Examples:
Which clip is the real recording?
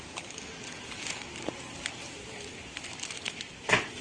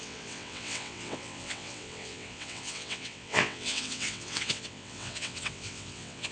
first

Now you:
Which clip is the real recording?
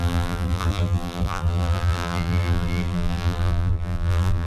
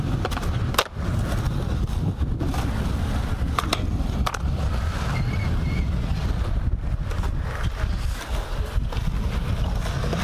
second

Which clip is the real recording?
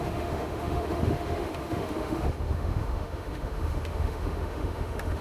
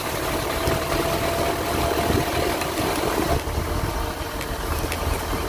second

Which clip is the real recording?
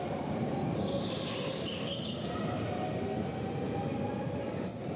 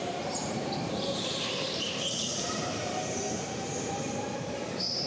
first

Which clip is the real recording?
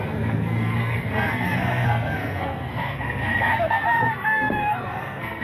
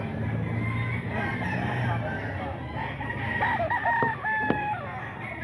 second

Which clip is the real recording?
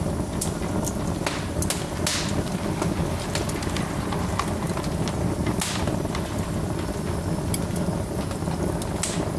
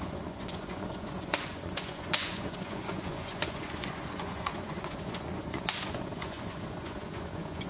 first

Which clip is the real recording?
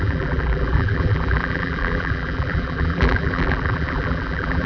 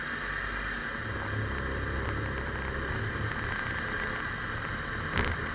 second